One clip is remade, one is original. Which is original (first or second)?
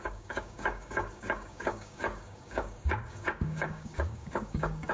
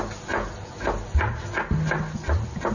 second